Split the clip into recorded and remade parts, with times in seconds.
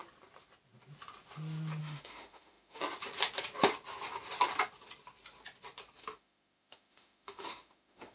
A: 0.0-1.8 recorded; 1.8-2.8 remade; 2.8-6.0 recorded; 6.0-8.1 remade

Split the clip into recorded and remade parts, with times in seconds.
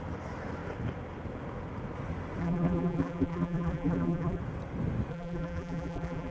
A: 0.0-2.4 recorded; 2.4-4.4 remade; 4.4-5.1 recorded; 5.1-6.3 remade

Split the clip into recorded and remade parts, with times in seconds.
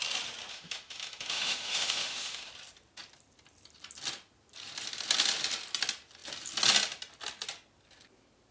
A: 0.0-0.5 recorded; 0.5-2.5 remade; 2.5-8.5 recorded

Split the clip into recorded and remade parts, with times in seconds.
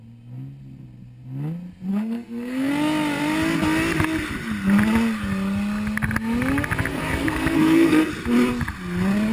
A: 0.0-1.9 recorded; 1.9-2.7 remade; 2.7-6.9 recorded; 6.9-8.1 remade; 8.1-9.3 recorded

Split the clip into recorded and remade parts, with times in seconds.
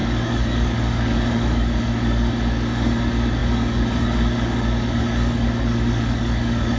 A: 0.0-6.8 remade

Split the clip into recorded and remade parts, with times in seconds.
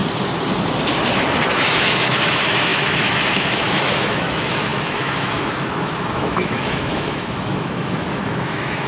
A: 0.0-1.5 recorded; 1.5-8.9 remade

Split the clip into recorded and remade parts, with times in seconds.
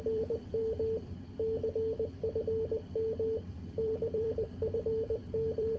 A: 0.0-0.6 remade; 0.6-3.7 recorded; 3.7-5.8 remade